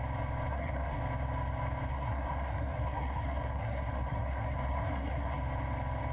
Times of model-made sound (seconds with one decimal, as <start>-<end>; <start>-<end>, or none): 0.5-1.0; 1.9-5.4